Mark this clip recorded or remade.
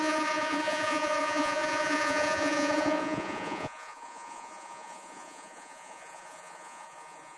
remade